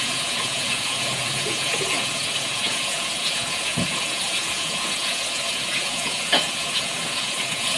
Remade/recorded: remade